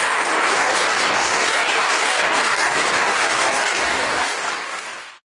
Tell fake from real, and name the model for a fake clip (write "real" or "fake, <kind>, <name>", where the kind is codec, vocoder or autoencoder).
fake, codec, DAC